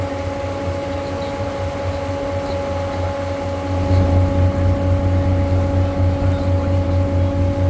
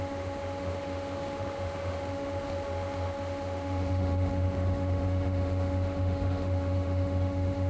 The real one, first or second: first